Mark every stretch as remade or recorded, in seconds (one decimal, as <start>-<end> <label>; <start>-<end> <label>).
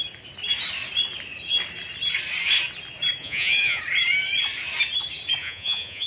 0.0-3.2 recorded; 3.2-3.8 remade; 3.8-5.4 recorded; 5.4-6.1 remade